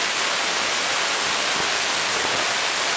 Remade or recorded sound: recorded